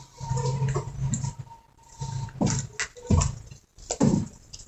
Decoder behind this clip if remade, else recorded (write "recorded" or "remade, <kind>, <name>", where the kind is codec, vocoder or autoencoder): recorded